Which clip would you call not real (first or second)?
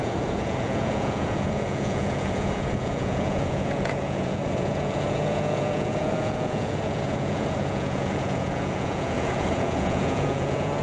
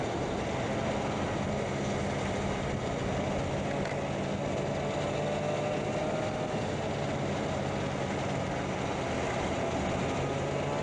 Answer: first